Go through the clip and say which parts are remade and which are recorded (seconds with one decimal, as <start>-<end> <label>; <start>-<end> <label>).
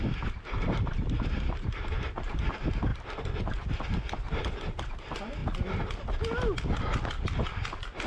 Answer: 0.0-8.1 recorded